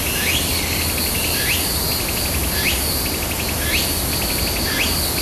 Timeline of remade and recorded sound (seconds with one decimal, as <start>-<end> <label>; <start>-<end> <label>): 0.0-5.2 recorded